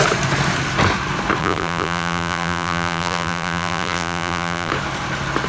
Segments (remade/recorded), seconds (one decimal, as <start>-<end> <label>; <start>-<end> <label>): 0.0-1.4 recorded; 1.4-4.7 remade; 4.7-5.5 recorded